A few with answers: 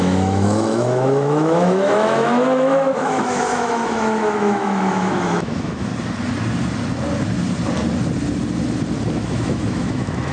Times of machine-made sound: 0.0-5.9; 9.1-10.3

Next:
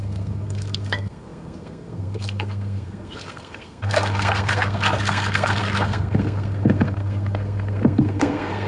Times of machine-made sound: 0.0-8.7

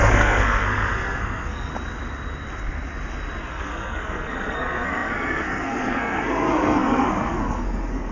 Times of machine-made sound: 0.0-1.7; 3.5-8.1